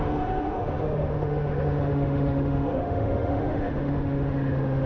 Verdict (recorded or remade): remade